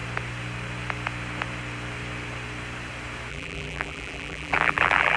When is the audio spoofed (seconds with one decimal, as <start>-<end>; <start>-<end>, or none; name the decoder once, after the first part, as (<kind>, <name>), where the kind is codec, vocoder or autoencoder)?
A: 3.3-5.2 (vocoder, BigVGAN v2)